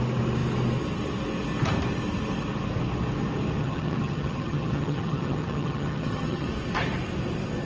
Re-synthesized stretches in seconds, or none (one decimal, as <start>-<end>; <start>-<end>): 3.6-6.5